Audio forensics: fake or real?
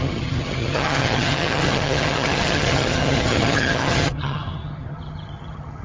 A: fake